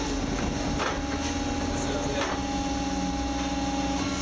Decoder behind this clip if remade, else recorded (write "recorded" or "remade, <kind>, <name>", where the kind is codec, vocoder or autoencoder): recorded